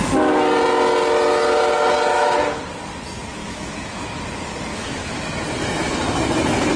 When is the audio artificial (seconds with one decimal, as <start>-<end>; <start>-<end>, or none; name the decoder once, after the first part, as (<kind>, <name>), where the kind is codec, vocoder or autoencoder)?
2.1-2.6 (autoencoder, DAC-VAE); 3.4-4.2; 4.7-5.2